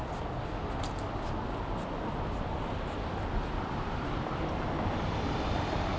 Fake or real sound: real